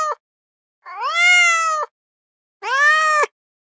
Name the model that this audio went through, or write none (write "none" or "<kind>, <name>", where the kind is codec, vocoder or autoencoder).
none